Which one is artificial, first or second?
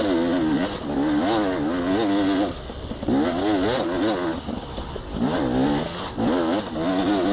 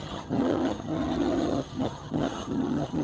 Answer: second